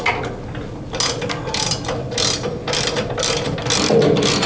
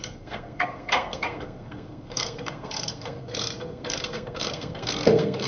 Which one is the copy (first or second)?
second